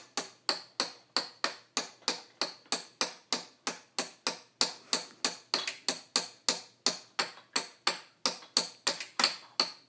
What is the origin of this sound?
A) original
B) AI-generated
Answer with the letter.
A